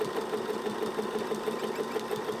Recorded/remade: recorded